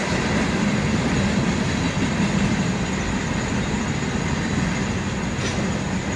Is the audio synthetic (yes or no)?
no